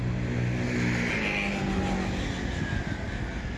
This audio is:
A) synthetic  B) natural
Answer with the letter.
B